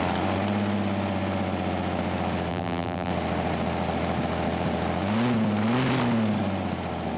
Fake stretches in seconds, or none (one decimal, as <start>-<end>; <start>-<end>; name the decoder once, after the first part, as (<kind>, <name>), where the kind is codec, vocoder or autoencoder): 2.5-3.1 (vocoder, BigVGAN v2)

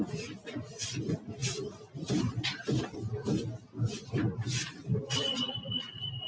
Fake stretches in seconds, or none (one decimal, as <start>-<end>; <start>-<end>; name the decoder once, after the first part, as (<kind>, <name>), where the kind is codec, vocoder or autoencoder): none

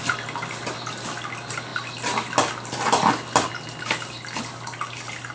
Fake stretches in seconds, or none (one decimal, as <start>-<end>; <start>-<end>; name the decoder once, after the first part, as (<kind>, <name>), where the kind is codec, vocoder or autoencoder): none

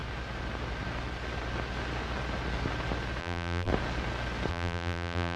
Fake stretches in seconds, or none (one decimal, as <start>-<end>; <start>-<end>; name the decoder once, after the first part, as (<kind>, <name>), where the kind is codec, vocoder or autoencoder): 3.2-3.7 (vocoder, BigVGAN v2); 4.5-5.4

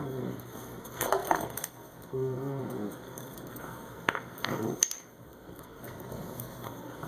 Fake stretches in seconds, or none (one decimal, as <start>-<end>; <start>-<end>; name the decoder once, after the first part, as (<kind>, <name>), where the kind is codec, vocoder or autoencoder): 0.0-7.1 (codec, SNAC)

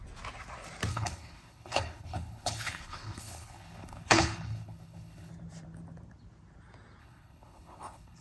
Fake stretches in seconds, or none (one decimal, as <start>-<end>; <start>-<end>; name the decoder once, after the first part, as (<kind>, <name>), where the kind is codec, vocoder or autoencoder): 0.9-5.3 (codec, HILCodec); 7.0-8.2

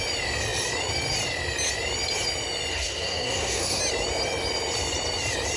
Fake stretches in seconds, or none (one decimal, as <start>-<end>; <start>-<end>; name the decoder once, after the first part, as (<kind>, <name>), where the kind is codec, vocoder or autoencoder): 2.7-3.8 (codec, SNAC)

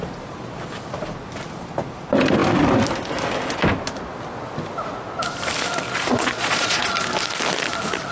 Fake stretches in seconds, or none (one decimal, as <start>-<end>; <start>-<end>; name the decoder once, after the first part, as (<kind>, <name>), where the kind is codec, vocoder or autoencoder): 6.1-6.9 (vocoder, Vocos)